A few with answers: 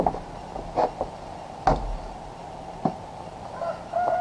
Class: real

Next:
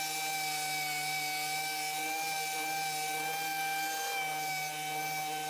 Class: real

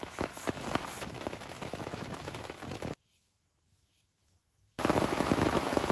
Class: fake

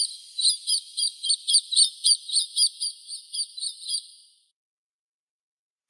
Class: real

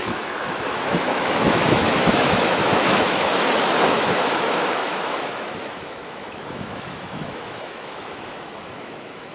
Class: fake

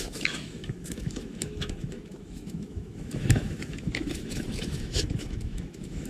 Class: fake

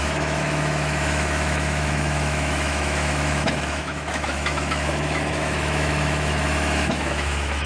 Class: fake